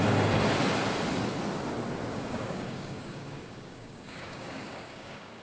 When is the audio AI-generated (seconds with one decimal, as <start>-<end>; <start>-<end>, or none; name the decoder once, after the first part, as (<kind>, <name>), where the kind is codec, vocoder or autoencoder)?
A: 2.1-5.4 (codec, DAC)